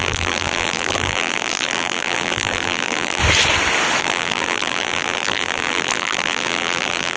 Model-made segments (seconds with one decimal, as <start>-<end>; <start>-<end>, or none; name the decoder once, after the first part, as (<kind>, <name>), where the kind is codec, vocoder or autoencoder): 0.0-3.2 (vocoder, BigVGAN v2); 4.0-7.2